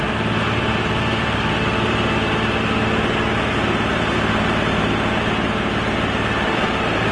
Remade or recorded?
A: recorded